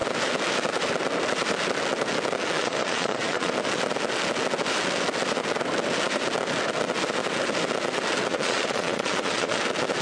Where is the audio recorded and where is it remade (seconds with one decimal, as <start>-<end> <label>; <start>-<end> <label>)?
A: 0.0-2.4 recorded; 2.4-3.5 remade; 3.5-8.3 recorded; 8.3-9.6 remade; 9.6-10.0 recorded